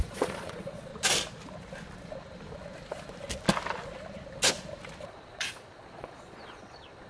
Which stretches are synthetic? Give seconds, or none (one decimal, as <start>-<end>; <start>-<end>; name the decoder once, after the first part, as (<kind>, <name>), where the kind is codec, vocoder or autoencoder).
0.0-0.9 (vocoder, Vocos); 5.0-7.1